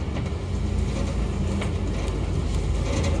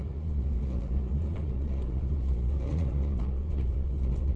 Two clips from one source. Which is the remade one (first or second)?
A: second